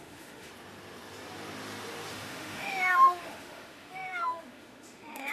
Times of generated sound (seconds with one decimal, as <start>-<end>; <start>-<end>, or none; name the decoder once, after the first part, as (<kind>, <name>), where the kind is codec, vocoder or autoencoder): 0.0-0.5 (autoencoder, DAC-VAE); 2.1-5.3